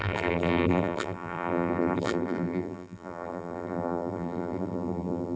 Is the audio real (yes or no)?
no